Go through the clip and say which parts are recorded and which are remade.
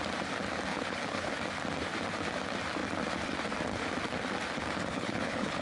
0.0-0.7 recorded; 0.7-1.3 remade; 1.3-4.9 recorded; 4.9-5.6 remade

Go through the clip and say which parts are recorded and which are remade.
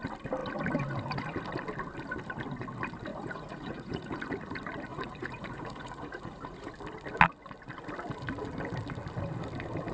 0.0-3.1 recorded; 3.1-4.2 remade; 4.2-4.9 recorded; 4.9-6.7 remade; 6.7-9.9 recorded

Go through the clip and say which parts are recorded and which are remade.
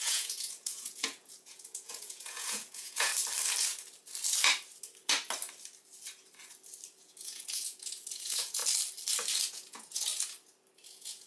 0.0-3.1 remade; 3.1-7.0 recorded; 7.0-8.6 remade; 8.6-9.5 recorded; 9.5-10.1 remade; 10.1-10.9 recorded; 10.9-11.3 remade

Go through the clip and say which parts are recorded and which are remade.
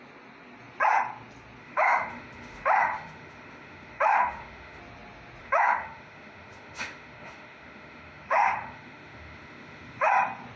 0.0-1.6 recorded; 1.6-4.8 remade; 4.8-5.4 recorded; 5.4-10.1 remade; 10.1-10.6 recorded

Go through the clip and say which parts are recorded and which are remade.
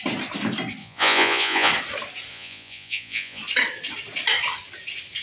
0.0-0.8 recorded; 0.8-1.7 remade; 1.7-2.3 recorded; 2.3-3.4 remade; 3.4-5.2 recorded